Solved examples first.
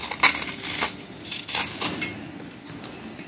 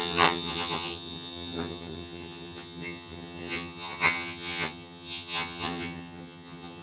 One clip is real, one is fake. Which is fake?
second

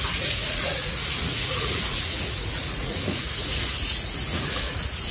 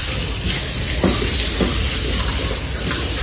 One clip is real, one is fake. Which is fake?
first